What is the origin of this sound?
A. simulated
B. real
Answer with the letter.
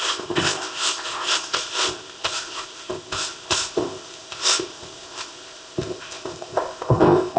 A